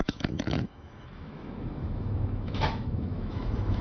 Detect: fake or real fake